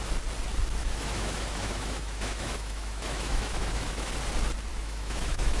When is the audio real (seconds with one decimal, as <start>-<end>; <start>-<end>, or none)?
0.0-0.8; 4.1-4.7